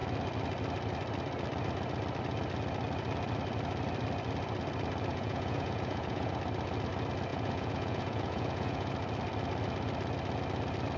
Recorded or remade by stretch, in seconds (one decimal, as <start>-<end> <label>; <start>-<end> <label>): 0.0-5.1 recorded; 5.1-6.3 remade; 6.3-7.3 recorded; 7.3-8.9 remade; 8.9-11.0 recorded